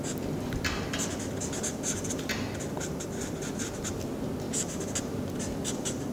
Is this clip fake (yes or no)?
no